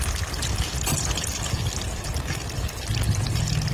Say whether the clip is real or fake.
real